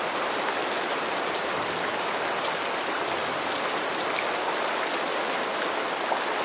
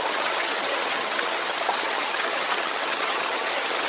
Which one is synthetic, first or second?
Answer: second